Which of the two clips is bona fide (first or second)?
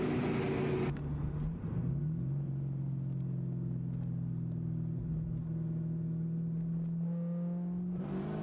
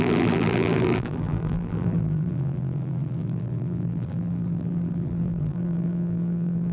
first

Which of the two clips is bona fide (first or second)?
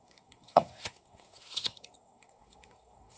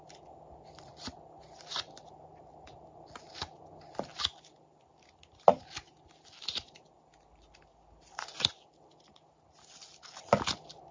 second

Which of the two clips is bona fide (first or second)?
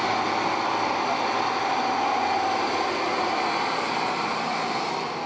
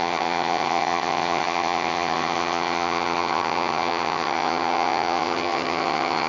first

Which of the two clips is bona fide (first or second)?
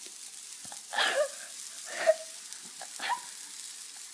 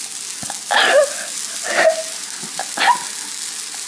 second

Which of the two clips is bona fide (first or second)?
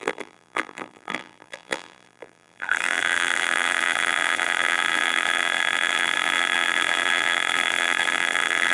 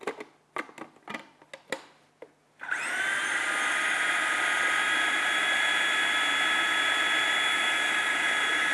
second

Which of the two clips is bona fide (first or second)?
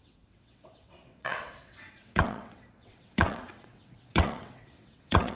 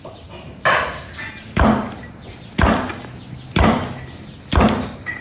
second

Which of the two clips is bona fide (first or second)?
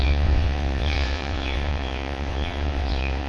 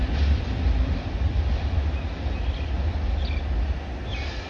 second